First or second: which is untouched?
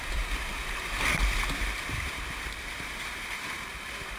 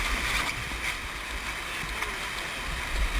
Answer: second